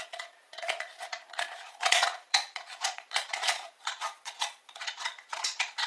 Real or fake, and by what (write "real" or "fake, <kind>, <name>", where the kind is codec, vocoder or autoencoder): fake, vocoder, Vocos